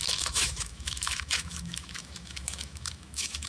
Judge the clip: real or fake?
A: fake